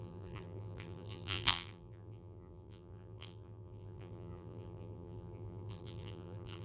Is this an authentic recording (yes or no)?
no